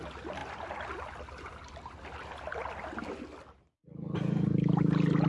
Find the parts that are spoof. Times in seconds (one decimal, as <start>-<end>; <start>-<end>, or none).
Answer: none